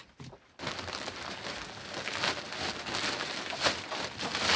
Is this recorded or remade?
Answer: recorded